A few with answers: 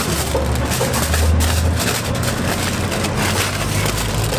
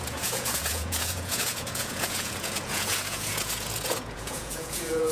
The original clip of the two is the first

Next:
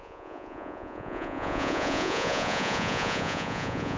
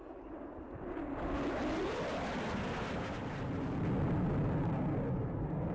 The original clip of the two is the second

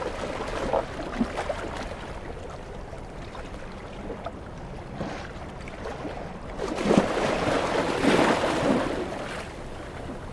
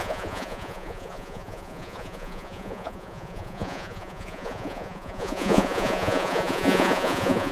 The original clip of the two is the first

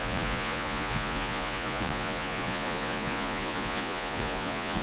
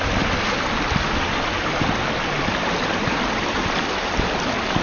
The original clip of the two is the second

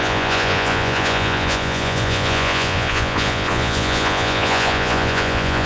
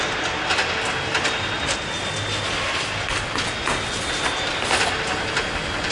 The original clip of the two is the second